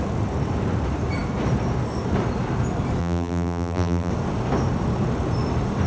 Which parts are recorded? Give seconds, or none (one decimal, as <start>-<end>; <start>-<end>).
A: 0.0-3.0; 4.1-5.9